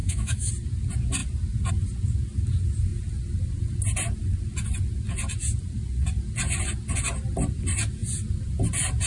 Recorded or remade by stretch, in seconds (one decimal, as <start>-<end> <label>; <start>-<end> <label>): 0.0-0.5 remade; 0.5-9.1 recorded